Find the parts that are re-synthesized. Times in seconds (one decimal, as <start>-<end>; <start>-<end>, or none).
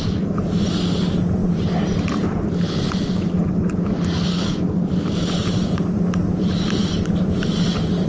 none